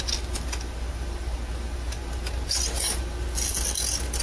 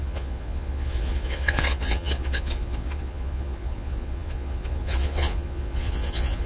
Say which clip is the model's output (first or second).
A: second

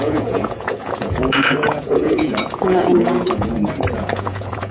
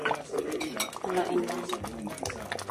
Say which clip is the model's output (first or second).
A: first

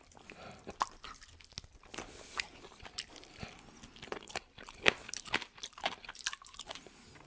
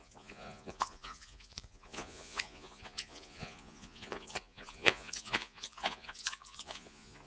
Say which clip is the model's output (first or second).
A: second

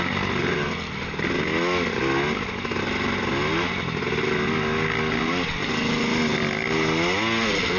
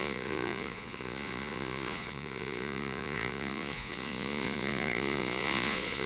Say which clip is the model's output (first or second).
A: second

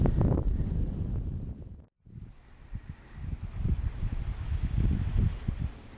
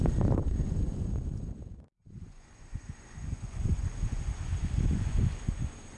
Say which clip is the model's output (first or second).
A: second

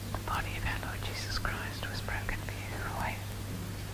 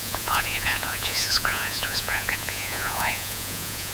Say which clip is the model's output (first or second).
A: second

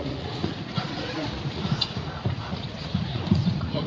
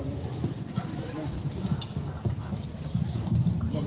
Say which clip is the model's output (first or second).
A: first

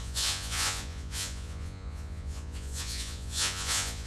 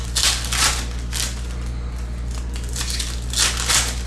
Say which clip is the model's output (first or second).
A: first